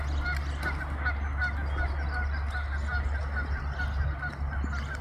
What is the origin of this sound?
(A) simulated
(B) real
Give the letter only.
B